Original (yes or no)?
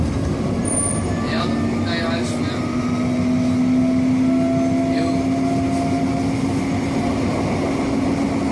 yes